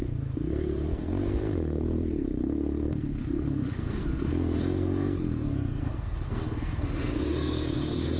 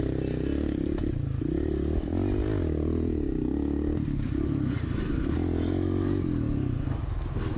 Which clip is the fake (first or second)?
first